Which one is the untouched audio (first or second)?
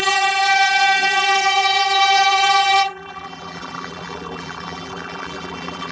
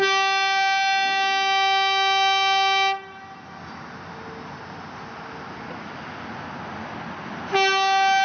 second